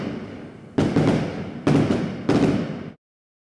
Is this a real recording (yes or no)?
yes